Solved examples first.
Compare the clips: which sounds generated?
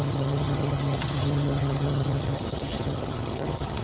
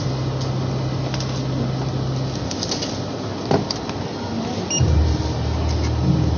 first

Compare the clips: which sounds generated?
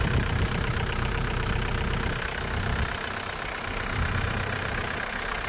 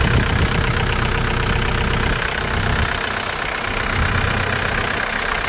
first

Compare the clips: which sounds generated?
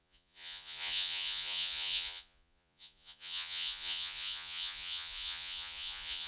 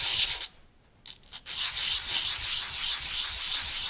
first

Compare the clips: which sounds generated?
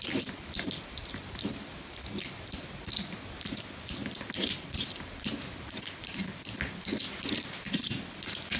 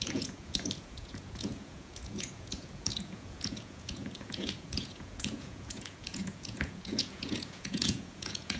second